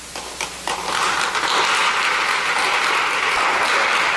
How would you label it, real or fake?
real